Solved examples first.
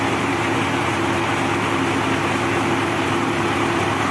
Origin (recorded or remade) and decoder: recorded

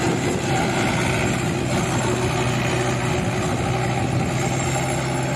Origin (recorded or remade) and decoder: recorded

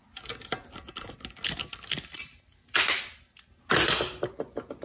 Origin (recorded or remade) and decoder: recorded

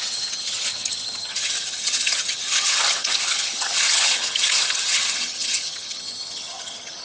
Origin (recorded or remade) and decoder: remade, vocoder, HiFi-GAN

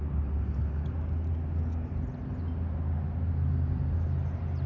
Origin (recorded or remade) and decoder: recorded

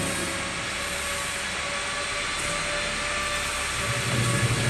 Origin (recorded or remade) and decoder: recorded